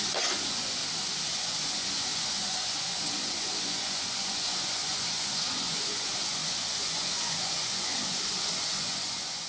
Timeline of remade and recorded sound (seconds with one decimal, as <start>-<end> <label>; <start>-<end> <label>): 0.0-0.8 remade; 0.8-1.3 recorded; 1.3-9.5 remade